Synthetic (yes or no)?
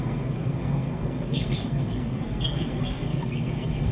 yes